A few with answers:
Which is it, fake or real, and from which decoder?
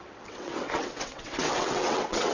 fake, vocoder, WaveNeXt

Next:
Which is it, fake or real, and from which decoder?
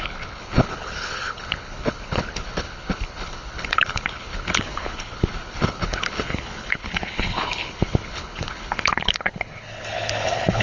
fake, codec, HILCodec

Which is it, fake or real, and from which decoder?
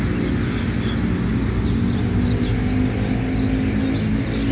real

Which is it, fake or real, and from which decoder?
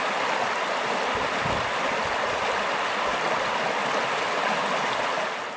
real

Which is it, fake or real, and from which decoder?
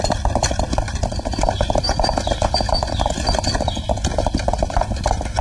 fake, vocoder, BigVGAN v2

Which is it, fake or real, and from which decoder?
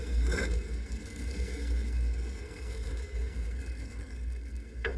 fake, codec, SNAC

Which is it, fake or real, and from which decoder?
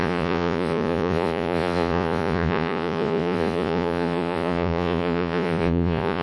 fake, vocoder, Vocos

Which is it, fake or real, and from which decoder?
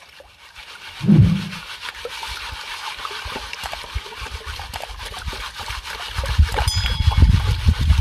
real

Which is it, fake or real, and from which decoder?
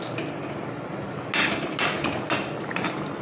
real